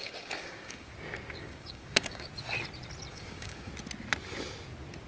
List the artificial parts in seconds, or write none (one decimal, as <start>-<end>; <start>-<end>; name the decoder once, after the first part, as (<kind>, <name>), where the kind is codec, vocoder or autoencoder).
0.0-0.9 (codec, DAC); 1.4-2.3; 3.1-3.7